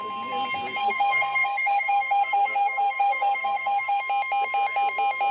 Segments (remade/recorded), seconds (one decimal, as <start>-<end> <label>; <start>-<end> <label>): 0.0-0.8 recorded; 0.8-4.0 remade; 4.0-5.3 recorded